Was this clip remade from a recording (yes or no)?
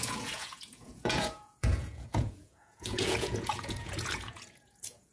yes